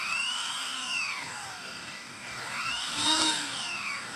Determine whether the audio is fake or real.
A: fake